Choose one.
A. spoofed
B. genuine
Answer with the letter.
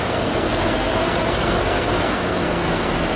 A